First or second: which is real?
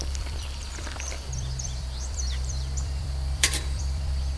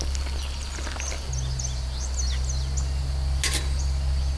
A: second